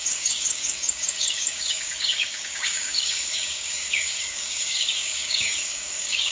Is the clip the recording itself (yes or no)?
no